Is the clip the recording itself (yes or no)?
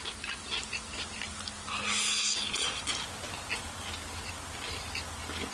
yes